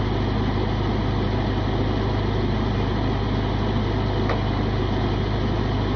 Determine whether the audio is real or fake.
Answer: real